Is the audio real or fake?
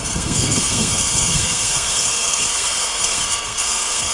fake